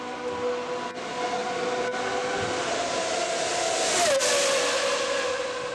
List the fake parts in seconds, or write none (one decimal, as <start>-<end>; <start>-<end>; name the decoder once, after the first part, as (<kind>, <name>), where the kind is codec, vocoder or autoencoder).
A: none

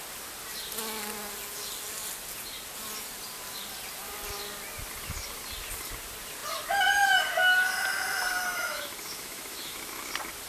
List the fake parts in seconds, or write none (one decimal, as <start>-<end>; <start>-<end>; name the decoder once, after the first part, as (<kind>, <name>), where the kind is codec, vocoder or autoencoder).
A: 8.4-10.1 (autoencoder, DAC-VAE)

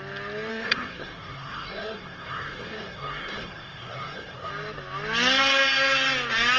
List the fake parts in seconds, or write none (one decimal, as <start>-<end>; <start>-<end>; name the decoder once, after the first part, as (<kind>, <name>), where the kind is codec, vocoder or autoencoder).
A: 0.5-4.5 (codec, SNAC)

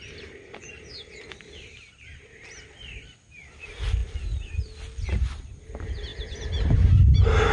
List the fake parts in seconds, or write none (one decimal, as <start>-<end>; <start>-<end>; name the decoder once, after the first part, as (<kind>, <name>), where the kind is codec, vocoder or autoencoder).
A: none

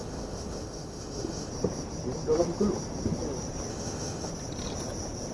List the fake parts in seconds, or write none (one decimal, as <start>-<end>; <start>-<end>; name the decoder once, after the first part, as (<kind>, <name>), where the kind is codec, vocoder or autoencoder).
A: 0.0-1.5 (autoencoder, DAC-VAE); 3.7-4.3

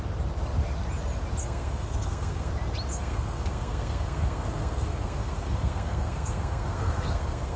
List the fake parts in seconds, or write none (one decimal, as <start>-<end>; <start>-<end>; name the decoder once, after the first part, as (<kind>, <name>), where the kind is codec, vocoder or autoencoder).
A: 1.4-2.5 (codec, SNAC); 2.9-7.6